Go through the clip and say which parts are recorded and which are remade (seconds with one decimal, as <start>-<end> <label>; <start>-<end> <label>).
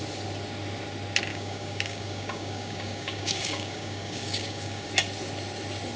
0.0-1.3 recorded; 1.3-4.9 remade; 4.9-6.0 recorded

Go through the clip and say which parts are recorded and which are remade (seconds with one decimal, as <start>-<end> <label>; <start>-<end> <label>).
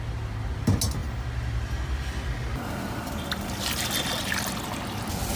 0.0-5.4 recorded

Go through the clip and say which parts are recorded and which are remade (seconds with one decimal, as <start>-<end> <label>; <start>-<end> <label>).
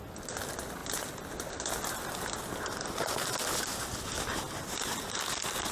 0.0-5.7 recorded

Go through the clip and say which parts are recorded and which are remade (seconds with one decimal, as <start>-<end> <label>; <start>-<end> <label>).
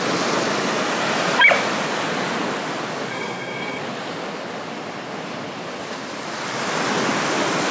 0.0-3.1 recorded; 3.1-3.8 remade; 3.8-7.7 recorded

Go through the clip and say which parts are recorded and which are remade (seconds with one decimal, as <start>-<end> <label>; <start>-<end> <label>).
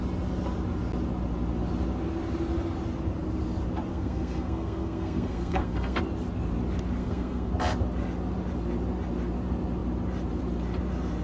0.0-3.9 recorded; 3.9-6.0 remade; 6.0-7.0 recorded; 7.0-7.5 remade; 7.5-11.2 recorded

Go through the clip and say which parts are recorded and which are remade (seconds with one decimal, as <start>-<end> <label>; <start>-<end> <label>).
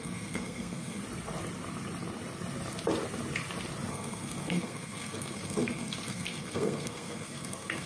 0.0-1.0 remade; 1.0-3.9 recorded; 3.9-7.9 remade